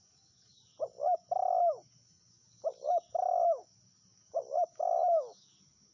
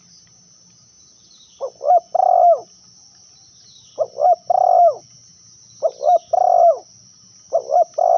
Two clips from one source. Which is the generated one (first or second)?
first